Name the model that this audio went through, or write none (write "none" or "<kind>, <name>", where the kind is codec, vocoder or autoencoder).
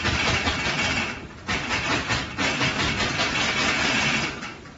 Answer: vocoder, BigVGAN v2